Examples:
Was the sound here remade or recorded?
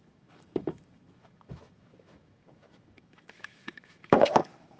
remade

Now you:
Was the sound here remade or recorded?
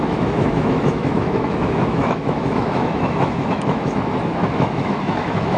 remade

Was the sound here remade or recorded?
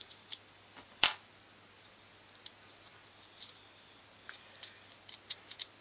recorded